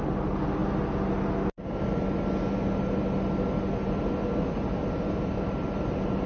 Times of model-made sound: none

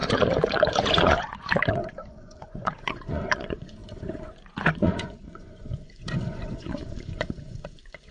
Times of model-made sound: 0.0-8.1 (vocoder, Vocos)

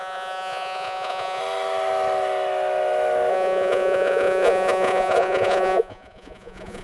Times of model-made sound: 0.0-1.4 (vocoder, Vocos); 3.3-6.8

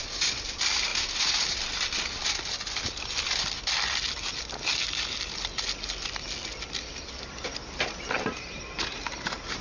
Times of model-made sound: none

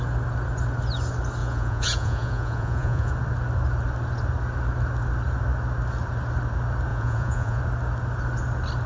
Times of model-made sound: 1.4-3.1 (vocoder, Vocos); 6.9-7.6